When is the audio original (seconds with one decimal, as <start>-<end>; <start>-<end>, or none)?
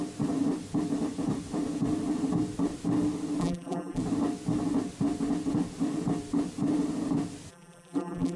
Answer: 0.0-3.4; 4.0-7.5